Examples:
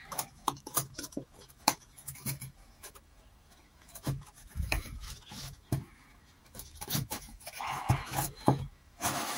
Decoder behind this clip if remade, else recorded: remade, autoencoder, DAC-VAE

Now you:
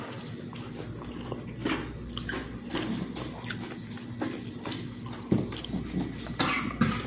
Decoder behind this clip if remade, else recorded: recorded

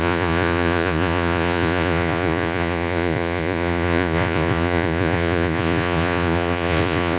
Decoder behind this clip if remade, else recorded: remade, vocoder, Vocos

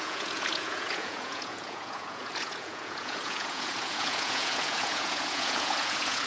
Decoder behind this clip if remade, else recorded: remade, vocoder, Vocos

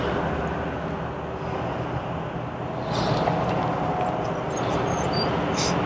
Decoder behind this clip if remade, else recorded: recorded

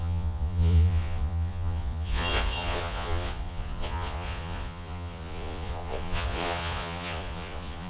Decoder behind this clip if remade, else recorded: remade, vocoder, Vocos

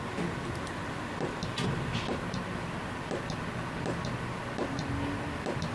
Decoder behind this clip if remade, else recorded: recorded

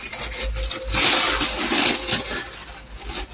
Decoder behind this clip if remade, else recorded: recorded